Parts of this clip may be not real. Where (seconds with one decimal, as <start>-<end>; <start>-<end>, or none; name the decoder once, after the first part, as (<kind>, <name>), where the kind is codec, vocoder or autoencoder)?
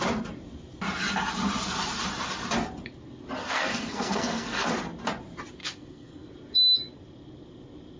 3.4-4.7 (codec, SNAC); 5.6-6.3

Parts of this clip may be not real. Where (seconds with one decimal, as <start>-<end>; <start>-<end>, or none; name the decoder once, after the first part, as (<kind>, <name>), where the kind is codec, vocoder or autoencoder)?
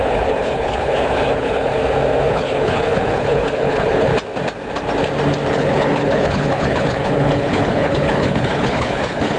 0.0-1.8 (codec, HILCodec); 2.3-4.1; 5.5-9.4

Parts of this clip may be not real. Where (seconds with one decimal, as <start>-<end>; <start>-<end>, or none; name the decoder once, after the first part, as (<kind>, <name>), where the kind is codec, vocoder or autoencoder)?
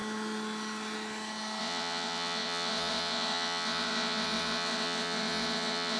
1.6-6.0 (vocoder, WaveNeXt)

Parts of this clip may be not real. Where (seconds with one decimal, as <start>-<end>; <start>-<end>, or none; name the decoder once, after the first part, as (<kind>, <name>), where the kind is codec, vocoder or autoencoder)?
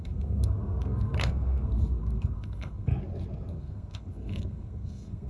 0.0-2.9 (codec, SNAC); 3.5-5.3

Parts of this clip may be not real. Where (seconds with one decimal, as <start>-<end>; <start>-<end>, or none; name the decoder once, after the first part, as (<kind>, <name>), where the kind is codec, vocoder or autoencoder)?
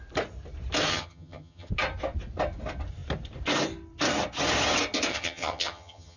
0.9-1.7 (vocoder, HiFi-GAN); 5.1-6.2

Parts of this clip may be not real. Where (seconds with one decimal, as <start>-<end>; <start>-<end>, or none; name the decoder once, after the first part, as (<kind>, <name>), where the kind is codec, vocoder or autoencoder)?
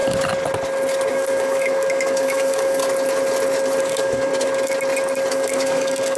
1.1-2.8 (codec, DAC); 3.8-4.3; 5.3-6.2